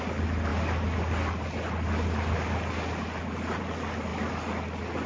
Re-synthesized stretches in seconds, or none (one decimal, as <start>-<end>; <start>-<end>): none